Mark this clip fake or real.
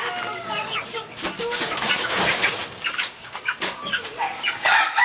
fake